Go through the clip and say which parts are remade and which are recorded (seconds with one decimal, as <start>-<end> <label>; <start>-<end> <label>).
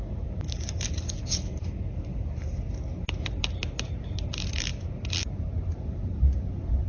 0.0-6.9 recorded